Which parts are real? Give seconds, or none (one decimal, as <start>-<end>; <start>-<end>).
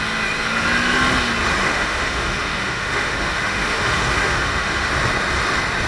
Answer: 0.0-1.6; 4.9-5.9